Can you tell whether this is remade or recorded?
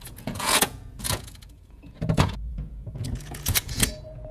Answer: remade